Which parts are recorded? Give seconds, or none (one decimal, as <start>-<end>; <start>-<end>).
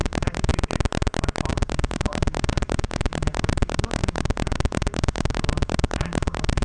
0.5-1.5